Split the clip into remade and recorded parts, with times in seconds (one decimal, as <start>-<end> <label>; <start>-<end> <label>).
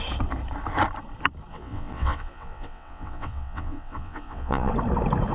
0.0-1.5 recorded; 1.5-4.7 remade; 4.7-5.3 recorded